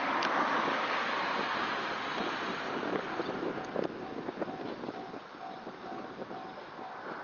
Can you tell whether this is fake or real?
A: real